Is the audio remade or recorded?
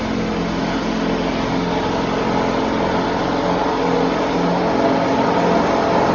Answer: recorded